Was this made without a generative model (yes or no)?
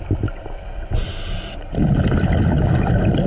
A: yes